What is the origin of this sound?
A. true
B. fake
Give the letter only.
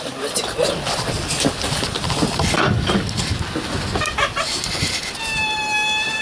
A